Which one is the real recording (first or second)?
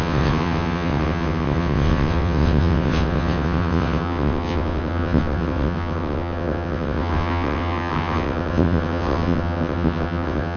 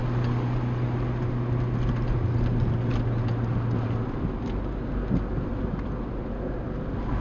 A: second